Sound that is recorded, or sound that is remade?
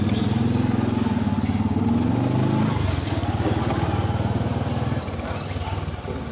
recorded